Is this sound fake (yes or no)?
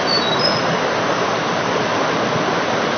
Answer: no